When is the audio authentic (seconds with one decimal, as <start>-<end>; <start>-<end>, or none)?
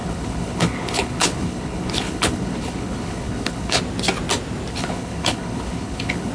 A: 3.8-4.7